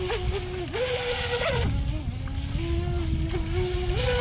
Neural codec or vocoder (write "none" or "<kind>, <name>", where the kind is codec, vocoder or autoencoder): none